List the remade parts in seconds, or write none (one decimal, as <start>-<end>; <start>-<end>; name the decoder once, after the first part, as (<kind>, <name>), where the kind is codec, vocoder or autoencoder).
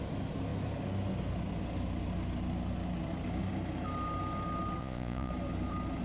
4.8-5.3 (vocoder, Vocos)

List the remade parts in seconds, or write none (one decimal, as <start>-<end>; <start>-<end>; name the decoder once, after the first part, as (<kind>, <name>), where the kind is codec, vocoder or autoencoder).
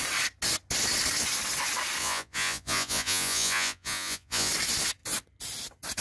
2.0-4.5 (vocoder, Vocos)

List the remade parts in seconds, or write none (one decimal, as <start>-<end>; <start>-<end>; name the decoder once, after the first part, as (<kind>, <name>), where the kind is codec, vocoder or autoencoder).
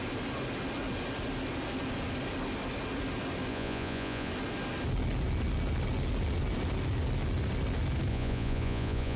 3.5-4.3 (vocoder, Vocos); 8.1-9.2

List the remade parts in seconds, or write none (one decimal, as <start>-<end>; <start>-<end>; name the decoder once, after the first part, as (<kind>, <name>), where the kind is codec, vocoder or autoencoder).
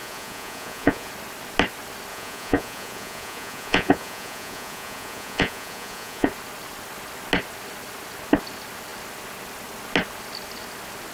0.0-1.1 (vocoder, Vocos); 2.1-6.3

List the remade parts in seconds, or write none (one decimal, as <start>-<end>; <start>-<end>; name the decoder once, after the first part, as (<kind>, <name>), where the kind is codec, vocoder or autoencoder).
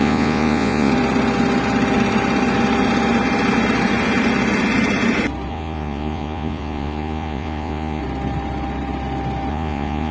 0.0-0.9 (vocoder, Vocos); 5.5-8.0; 9.5-10.1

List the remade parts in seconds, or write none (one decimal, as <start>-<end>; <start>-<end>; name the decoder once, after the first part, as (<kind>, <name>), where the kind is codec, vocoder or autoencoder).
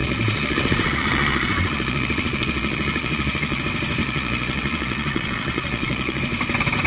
0.0-3.6 (vocoder, Vocos); 4.0-6.2